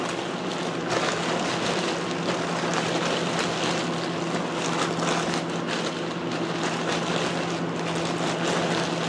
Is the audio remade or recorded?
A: recorded